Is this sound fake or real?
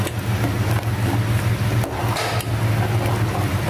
real